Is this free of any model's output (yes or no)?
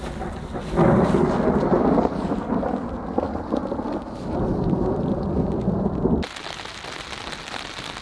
yes